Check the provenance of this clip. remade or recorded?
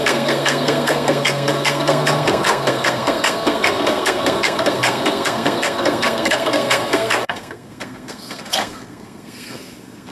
remade